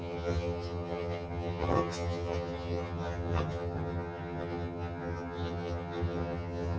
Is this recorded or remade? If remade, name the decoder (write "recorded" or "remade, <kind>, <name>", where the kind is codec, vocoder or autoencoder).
remade, vocoder, HiFi-GAN